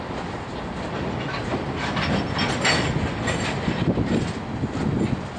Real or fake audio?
real